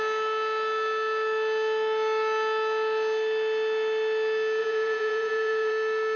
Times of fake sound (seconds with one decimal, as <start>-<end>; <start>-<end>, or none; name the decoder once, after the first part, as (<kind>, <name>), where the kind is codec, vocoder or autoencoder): 4.6-5.7 (vocoder, Vocos)